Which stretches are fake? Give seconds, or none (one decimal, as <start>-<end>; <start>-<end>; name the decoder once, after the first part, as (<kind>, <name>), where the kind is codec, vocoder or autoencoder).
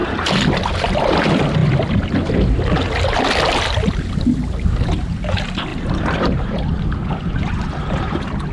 5.7-6.8 (vocoder, BigVGAN v2)